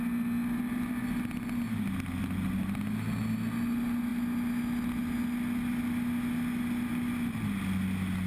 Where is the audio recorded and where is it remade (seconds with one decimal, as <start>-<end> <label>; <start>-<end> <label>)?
0.0-8.3 recorded